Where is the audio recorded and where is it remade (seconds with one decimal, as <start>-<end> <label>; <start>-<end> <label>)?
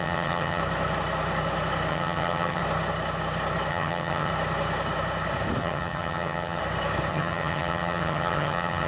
0.0-0.6 remade; 0.6-1.9 recorded; 1.9-2.6 remade; 2.6-3.7 recorded; 3.7-4.3 remade; 4.3-5.6 recorded; 5.6-6.6 remade; 6.6-7.1 recorded; 7.1-8.9 remade